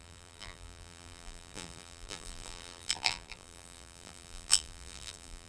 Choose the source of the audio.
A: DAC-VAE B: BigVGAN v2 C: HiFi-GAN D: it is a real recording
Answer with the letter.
B